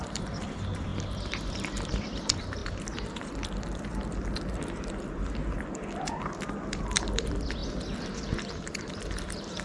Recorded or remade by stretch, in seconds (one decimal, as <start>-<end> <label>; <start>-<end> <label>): 0.0-0.9 remade; 0.9-1.5 recorded; 1.5-2.6 remade; 2.6-6.2 recorded; 6.2-7.6 remade; 7.6-8.2 recorded; 8.2-9.6 remade